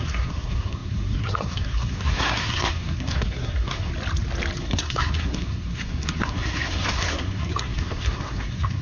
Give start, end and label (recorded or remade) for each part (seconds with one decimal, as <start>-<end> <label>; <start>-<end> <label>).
0.0-3.9 remade; 3.9-4.6 recorded; 4.6-8.8 remade